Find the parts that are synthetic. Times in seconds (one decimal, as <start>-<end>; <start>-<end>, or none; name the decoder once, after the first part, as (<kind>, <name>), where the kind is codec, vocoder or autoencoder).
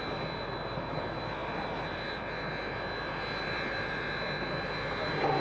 none